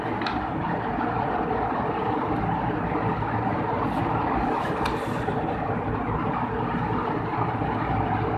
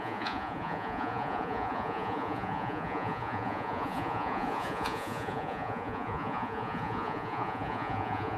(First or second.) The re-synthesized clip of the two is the second